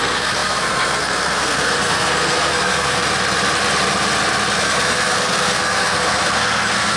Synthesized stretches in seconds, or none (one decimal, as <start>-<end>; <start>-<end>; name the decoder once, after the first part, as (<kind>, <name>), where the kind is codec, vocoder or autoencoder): 0.0-3.0 (codec, SNAC); 4.6-7.0

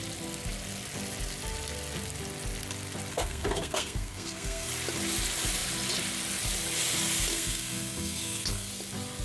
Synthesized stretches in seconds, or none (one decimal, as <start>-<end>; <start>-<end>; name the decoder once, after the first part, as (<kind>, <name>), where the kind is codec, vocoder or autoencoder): 3.1-4.7 (codec, SNAC); 7.3-8.7

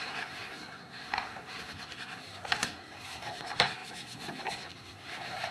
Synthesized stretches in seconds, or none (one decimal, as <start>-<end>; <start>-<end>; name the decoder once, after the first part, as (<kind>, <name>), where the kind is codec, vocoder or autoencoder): 0.0-5.5 (codec, SNAC)

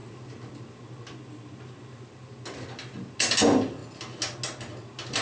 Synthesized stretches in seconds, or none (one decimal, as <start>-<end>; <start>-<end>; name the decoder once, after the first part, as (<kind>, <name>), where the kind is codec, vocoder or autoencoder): none

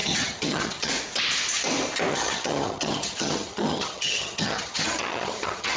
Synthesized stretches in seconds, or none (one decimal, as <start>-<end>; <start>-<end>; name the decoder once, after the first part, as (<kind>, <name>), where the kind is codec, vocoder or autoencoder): 0.0-0.9 (vocoder, HiFi-GAN); 2.1-5.8